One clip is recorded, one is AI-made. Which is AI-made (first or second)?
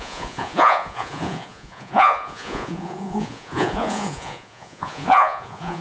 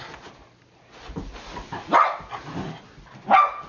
first